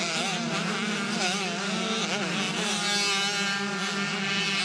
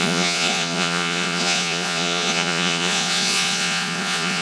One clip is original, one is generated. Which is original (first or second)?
first